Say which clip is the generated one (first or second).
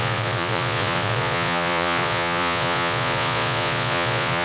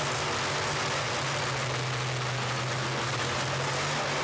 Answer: first